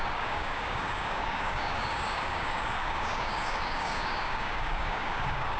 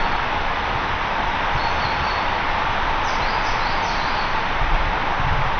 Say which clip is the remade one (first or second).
first